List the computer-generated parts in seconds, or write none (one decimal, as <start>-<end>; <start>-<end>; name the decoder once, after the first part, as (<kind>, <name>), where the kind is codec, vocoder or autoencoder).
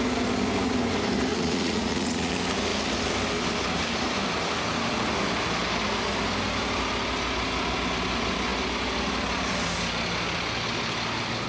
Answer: 1.3-2.3 (vocoder, Vocos)